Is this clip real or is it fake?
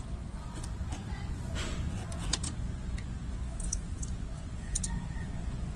fake